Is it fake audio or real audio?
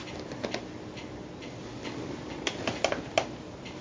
real